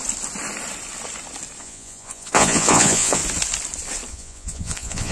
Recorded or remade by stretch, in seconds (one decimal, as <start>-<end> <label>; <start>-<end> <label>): 0.0-1.6 recorded; 1.6-3.2 remade; 3.2-4.1 recorded; 4.1-5.1 remade